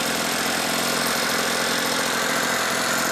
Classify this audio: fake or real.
real